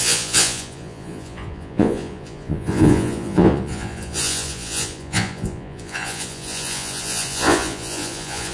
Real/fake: fake